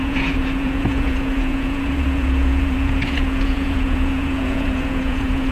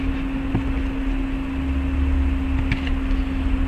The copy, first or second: first